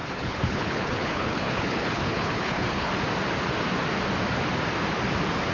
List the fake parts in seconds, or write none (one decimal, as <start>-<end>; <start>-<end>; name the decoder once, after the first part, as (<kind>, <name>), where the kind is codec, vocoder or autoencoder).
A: 0.0-2.9 (codec, HILCodec)